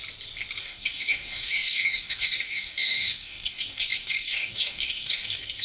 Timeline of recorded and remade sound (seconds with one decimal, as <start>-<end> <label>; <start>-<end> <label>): 0.0-0.6 recorded; 0.6-5.6 remade